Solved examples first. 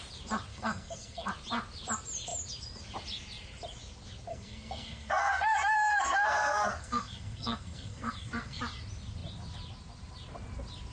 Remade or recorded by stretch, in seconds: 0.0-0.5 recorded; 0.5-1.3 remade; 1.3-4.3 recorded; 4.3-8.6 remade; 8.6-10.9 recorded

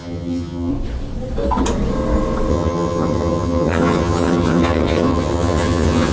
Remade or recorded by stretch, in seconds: 0.0-0.7 remade; 0.7-2.5 recorded; 2.5-6.1 remade

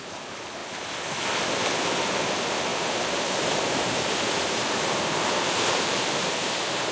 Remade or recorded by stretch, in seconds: 0.0-2.7 recorded; 2.7-6.9 remade

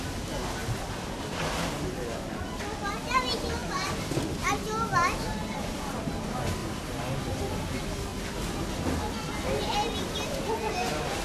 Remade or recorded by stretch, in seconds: 0.0-11.2 recorded

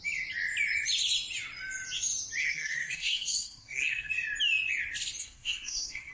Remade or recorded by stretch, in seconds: 0.0-2.4 recorded; 2.4-4.1 remade; 4.1-5.2 recorded; 5.2-6.1 remade

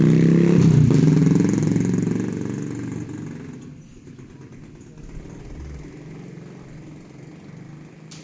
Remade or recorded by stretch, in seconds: 0.0-8.2 recorded